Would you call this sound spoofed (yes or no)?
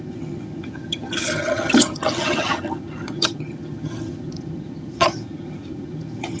yes